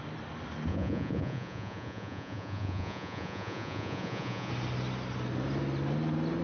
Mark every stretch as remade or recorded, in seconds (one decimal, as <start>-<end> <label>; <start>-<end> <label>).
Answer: 0.0-0.7 recorded; 0.7-4.5 remade; 4.5-6.4 recorded